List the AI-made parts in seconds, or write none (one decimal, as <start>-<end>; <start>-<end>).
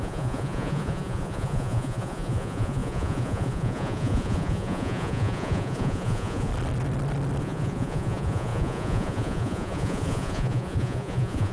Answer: 0.0-6.5; 7.4-11.5